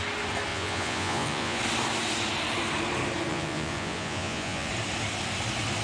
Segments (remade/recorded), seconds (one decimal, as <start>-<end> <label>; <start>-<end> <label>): 0.0-0.5 recorded; 0.5-1.6 remade; 1.6-3.3 recorded; 3.3-4.7 remade; 4.7-5.8 recorded

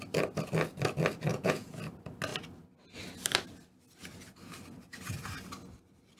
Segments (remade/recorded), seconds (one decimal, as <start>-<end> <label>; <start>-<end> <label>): 0.0-1.3 recorded; 1.3-1.8 remade; 1.8-6.2 recorded

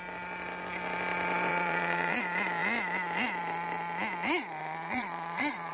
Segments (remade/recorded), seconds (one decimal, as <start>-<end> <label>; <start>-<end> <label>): 0.0-1.5 recorded; 1.5-2.2 remade; 2.2-4.6 recorded; 4.6-5.7 remade

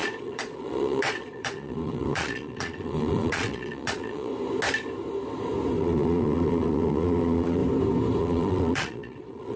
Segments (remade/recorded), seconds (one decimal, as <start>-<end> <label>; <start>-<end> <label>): 0.0-4.3 remade; 4.3-5.8 recorded; 5.8-7.6 remade; 7.6-8.2 recorded; 8.2-9.6 remade